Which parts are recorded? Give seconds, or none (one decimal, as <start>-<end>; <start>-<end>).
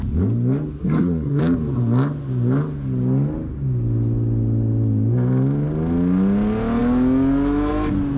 0.0-0.8; 1.4-8.2